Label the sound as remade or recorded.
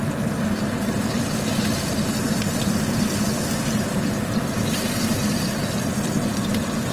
recorded